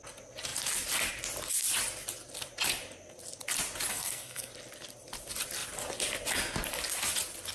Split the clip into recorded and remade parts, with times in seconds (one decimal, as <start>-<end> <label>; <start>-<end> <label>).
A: 0.0-3.9 recorded; 3.9-4.5 remade; 4.5-7.5 recorded